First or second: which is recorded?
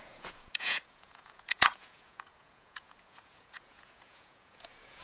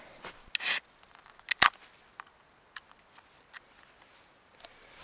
second